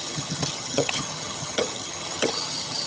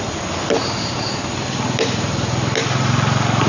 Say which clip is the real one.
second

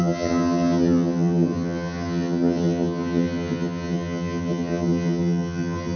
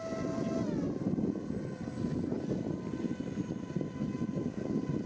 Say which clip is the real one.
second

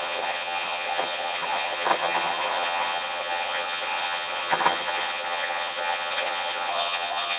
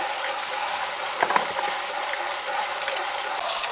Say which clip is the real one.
second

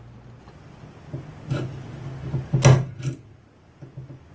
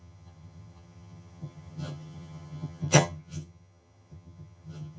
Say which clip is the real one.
first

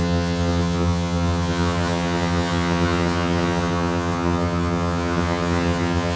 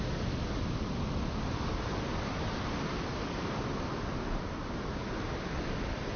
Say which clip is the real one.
second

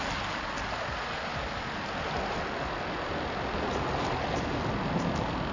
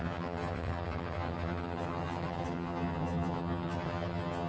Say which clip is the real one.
first